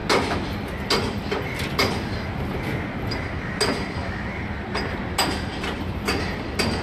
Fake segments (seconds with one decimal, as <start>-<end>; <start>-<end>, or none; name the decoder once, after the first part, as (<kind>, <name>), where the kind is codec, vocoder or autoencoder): none